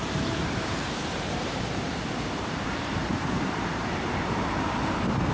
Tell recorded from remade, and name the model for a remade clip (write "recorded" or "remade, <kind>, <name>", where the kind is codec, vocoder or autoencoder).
remade, vocoder, BigVGAN v2